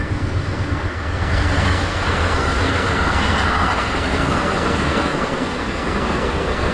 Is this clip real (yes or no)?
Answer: no